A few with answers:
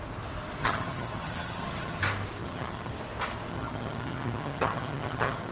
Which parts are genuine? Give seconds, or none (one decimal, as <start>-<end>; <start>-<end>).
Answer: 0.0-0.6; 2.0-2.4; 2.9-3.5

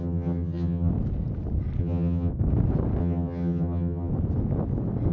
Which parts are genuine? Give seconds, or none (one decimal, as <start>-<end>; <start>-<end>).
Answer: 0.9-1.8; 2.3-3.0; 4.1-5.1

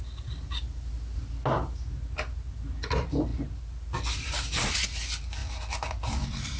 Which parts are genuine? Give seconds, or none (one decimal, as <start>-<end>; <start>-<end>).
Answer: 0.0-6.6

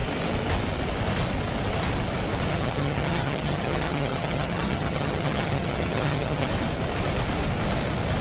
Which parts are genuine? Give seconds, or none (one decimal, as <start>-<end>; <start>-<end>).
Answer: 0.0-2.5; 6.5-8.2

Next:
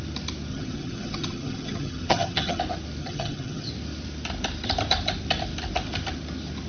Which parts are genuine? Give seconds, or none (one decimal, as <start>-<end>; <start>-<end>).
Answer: 0.0-0.5; 2.6-3.0; 3.7-6.7